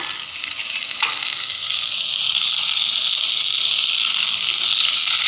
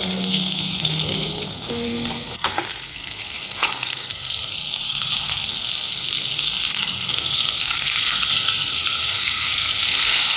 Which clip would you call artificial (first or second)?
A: second